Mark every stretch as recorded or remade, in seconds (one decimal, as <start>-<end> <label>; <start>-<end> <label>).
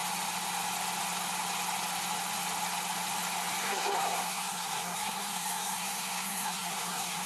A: 0.0-3.6 recorded; 3.6-7.3 remade